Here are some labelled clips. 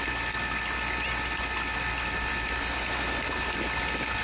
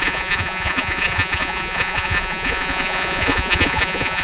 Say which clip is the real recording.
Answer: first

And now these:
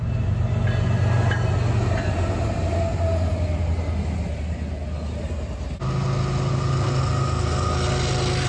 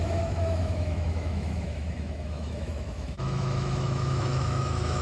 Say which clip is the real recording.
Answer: first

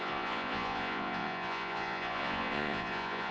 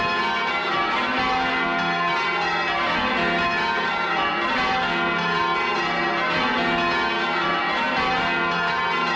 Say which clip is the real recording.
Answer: second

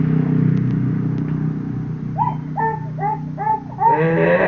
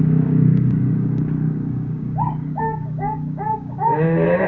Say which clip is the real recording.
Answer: first